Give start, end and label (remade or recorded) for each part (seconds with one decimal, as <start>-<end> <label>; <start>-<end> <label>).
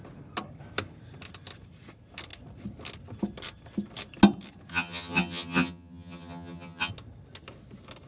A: 0.0-4.7 recorded; 4.7-6.9 remade; 6.9-8.1 recorded